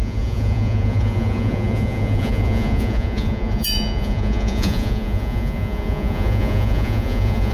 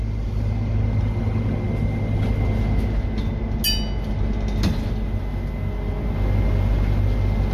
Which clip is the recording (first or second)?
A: second